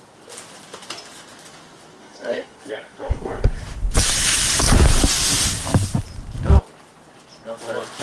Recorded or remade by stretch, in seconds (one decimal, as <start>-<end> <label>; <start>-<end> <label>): 0.0-2.0 recorded; 2.0-3.6 remade; 3.6-8.0 recorded